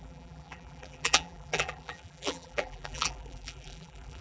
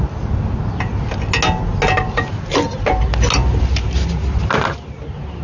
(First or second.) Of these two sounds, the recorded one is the second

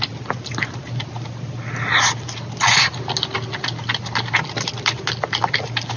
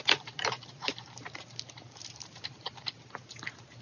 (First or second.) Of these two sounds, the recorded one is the first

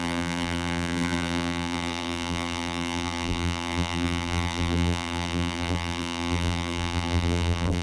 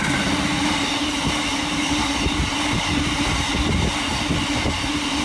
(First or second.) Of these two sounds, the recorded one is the second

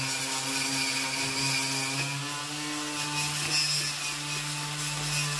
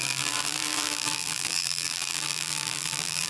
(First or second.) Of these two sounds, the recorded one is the first